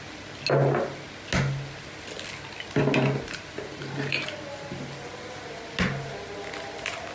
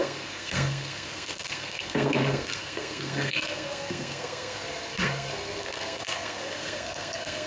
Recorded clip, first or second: first